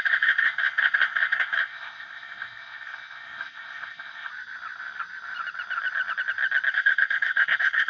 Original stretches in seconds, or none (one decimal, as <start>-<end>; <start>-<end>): 4.3-6.7